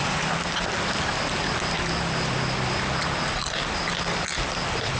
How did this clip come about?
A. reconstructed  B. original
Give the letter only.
B